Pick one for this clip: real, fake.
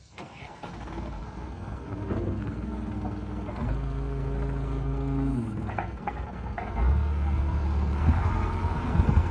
fake